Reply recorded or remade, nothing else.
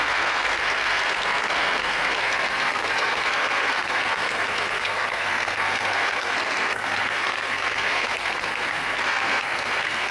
remade